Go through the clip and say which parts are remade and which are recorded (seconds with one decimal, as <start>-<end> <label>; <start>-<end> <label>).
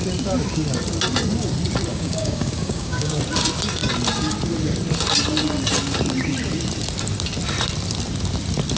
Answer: 0.0-1.9 recorded; 1.9-3.2 remade; 3.2-8.8 recorded